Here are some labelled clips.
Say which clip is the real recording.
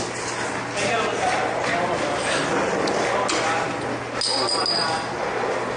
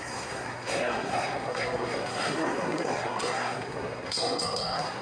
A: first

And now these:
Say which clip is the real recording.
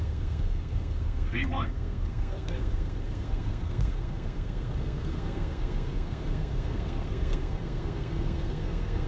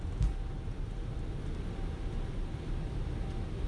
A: second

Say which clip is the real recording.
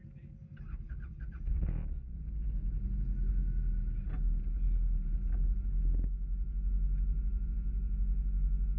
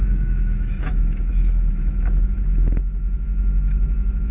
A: first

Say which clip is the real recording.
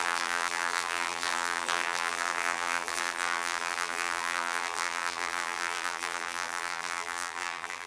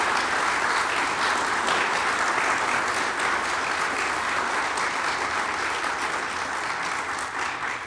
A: second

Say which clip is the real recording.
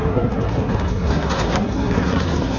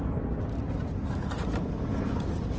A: second